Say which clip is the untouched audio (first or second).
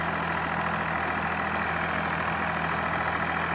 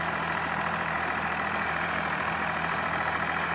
first